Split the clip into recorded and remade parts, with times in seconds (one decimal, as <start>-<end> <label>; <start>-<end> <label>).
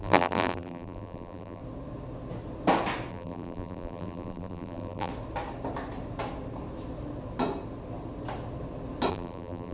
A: 0.0-1.6 remade; 1.6-3.1 recorded; 3.1-5.1 remade; 5.1-9.1 recorded; 9.1-9.7 remade